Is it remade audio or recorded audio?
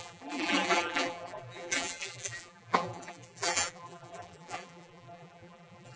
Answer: remade